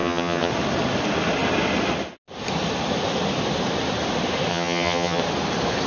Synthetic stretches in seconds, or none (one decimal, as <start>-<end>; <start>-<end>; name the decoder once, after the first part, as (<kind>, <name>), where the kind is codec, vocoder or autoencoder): 0.0-0.5 (vocoder, HiFi-GAN); 4.5-5.2